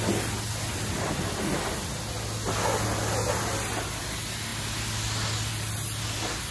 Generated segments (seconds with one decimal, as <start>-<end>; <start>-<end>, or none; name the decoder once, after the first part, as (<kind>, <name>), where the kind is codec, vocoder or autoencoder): none